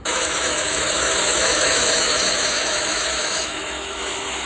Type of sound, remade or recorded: remade